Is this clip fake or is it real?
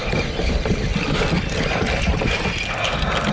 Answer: real